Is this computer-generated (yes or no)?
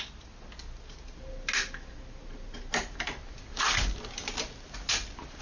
no